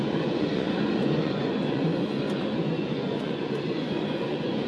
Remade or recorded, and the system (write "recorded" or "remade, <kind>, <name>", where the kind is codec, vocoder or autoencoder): remade, vocoder, Vocos